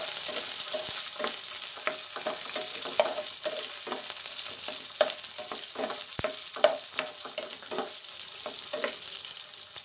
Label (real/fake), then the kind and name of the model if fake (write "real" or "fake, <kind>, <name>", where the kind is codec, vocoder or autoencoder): real